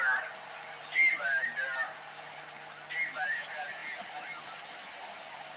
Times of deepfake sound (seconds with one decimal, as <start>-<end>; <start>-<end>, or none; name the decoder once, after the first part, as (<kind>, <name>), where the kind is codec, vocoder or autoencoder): none